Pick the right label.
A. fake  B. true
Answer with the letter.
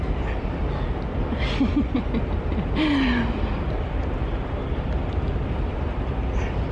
B